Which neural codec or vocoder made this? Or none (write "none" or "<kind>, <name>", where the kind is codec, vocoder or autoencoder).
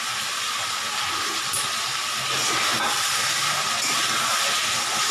none